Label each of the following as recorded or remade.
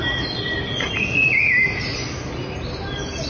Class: recorded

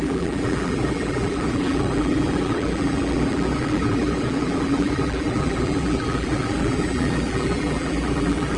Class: remade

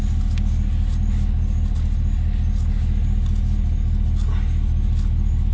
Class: recorded